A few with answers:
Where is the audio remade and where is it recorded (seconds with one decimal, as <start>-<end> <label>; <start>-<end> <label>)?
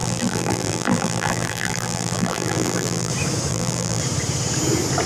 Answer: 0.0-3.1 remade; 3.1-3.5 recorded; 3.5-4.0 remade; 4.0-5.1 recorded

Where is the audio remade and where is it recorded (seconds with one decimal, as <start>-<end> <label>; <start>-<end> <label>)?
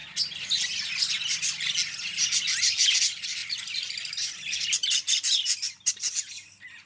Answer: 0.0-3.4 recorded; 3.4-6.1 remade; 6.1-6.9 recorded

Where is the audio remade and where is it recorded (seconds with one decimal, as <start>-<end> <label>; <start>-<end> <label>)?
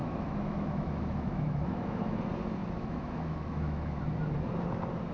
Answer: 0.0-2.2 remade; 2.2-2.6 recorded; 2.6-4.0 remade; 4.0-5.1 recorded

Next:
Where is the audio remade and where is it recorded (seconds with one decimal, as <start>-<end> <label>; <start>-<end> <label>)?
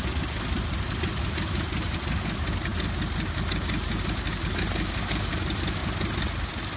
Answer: 0.0-6.8 recorded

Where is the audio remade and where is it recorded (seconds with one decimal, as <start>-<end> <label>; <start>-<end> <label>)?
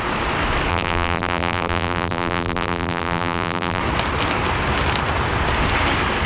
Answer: 0.0-0.7 recorded; 0.7-3.8 remade; 3.8-6.3 recorded